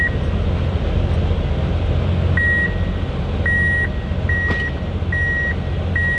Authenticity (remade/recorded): recorded